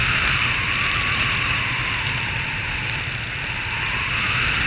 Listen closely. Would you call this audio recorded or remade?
recorded